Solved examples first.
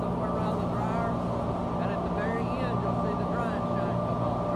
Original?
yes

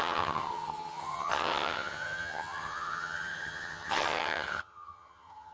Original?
no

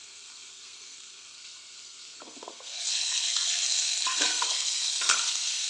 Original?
no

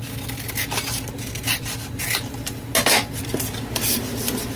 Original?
yes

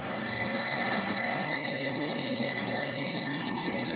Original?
no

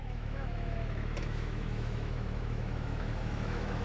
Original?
no